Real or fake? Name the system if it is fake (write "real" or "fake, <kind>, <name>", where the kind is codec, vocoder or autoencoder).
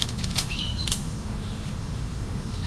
fake, autoencoder, DAC-VAE